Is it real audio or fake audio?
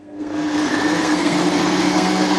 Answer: fake